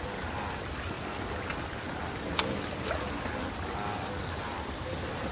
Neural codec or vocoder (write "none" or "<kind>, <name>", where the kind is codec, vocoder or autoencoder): none